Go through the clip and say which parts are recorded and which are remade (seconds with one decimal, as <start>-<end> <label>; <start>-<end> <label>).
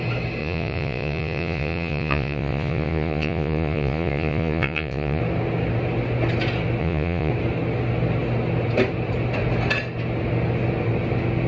0.0-0.4 recorded; 0.4-5.2 remade; 5.2-6.8 recorded; 6.8-7.3 remade; 7.3-11.5 recorded